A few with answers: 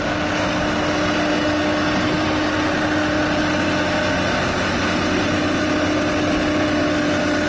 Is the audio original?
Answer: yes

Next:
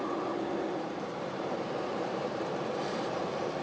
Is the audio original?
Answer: no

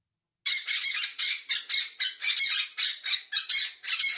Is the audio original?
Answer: yes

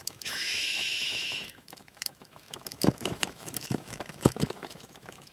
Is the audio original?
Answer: no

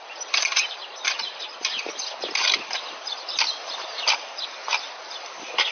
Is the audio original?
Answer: yes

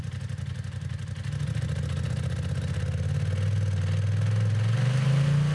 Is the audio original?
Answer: yes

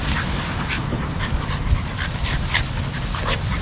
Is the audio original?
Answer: yes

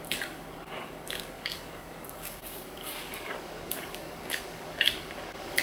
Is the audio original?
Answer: no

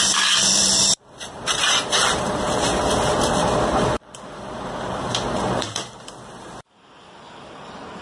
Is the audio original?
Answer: no